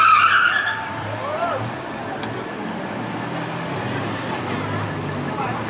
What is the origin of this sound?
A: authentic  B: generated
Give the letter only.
A